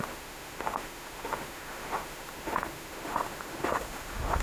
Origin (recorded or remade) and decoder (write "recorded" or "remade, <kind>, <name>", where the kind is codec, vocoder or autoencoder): remade, autoencoder, DAC-VAE